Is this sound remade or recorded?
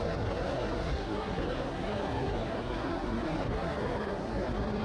remade